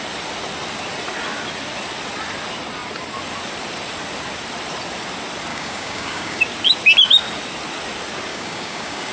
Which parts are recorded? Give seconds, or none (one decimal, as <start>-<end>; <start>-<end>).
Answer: 0.0-5.5; 6.4-8.3